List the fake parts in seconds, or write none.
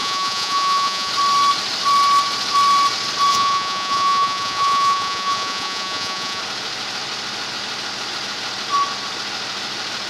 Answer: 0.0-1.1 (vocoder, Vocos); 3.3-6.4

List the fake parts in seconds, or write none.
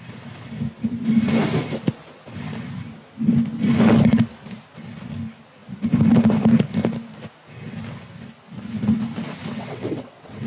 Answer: 9.4-10.5 (vocoder, WaveNeXt)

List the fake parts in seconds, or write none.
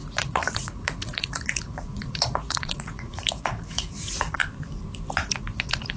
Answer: 0.0-4.4 (vocoder, Vocos); 5.2-6.0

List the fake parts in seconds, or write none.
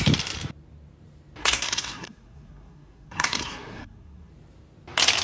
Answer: 1.4-4.3 (codec, SNAC)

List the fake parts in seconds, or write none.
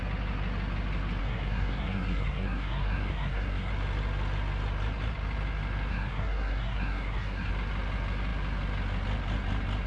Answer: 1.2-3.7 (codec, SNAC); 5.9-7.5